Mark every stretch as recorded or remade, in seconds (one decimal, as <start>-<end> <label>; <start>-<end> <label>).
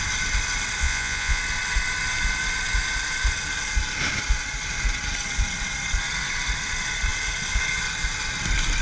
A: 0.0-0.8 recorded; 0.8-1.4 remade; 1.4-8.8 recorded